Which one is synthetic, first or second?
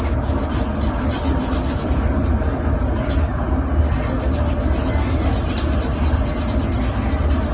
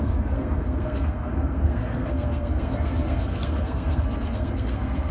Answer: second